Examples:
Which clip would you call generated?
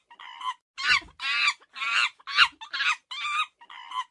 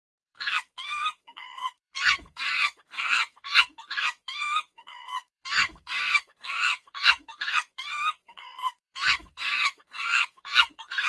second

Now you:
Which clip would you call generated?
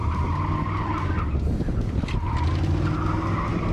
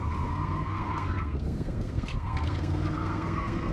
second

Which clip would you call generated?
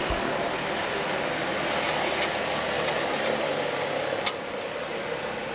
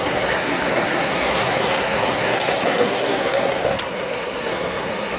second